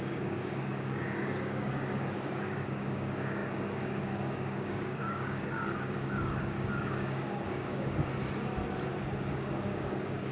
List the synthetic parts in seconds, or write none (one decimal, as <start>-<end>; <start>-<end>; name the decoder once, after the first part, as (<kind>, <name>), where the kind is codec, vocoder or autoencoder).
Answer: 0.0-8.1 (codec, DAC); 9.3-10.3